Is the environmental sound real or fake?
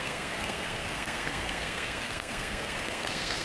fake